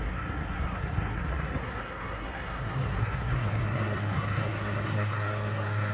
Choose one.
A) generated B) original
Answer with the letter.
A